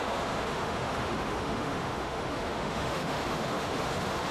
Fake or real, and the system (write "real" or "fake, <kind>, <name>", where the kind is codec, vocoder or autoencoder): fake, autoencoder, DAC-VAE